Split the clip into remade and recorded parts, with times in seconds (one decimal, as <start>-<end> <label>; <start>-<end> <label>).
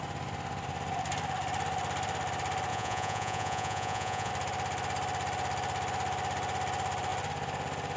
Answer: 0.0-2.7 recorded; 2.7-4.3 remade; 4.3-8.0 recorded